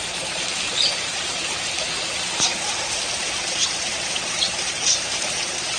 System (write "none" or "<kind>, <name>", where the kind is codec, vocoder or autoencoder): vocoder, BigVGAN v2